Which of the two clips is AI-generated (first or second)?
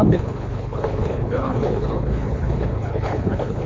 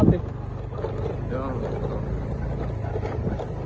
first